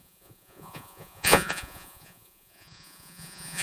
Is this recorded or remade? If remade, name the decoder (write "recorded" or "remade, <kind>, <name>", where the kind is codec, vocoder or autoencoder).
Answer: remade, vocoder, Vocos